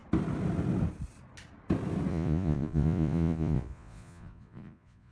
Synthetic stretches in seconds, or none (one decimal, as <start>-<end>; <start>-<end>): 2.1-5.1